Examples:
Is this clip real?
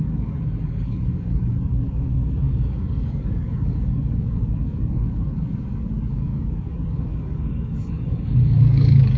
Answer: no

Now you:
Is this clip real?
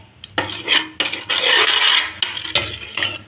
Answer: yes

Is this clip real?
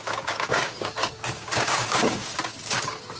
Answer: no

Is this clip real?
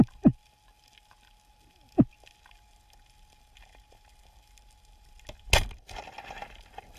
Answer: yes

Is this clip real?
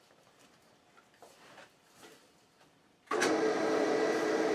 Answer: yes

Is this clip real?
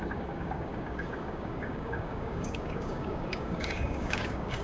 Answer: no